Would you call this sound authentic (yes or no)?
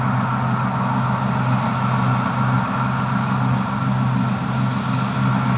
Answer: yes